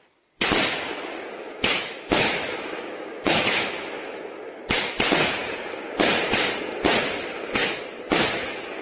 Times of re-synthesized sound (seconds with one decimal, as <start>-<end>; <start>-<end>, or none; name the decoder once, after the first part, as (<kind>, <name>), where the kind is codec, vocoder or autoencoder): 1.4-4.7 (autoencoder, DAC-VAE)